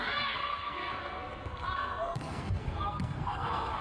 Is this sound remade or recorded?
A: remade